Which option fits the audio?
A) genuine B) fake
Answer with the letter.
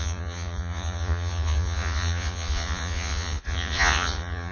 B